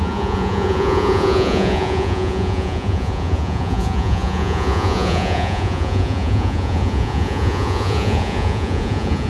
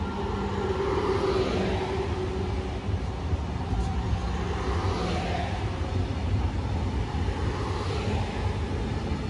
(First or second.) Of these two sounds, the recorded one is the second